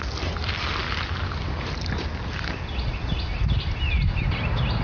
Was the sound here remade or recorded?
recorded